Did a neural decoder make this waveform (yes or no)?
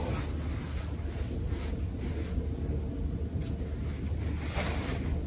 no